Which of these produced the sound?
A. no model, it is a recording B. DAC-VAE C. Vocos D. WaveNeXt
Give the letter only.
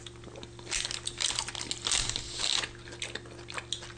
A